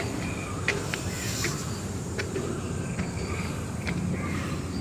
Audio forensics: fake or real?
fake